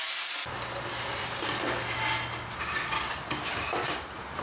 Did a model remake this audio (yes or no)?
no